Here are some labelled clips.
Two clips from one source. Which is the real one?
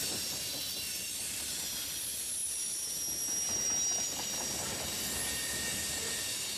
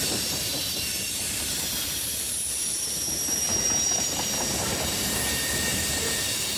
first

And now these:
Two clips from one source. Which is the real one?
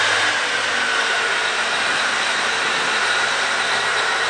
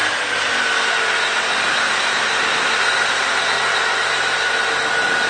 second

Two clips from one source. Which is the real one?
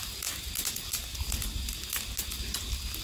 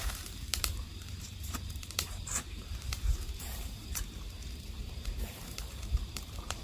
first